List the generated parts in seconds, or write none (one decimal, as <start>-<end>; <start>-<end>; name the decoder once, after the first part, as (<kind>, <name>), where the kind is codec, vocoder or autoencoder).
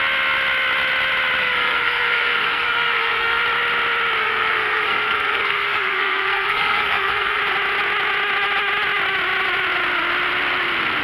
1.4-3.4 (codec, SNAC); 4.2-7.4